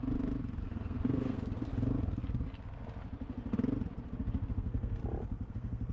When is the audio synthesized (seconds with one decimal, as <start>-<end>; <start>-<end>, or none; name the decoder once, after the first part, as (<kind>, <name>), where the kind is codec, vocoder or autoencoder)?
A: 0.6-1.6 (codec, SNAC); 4.5-5.0; 5.5-5.9